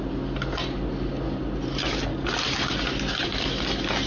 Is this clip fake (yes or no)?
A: no